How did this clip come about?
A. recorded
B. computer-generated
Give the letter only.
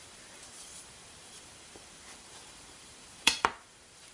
B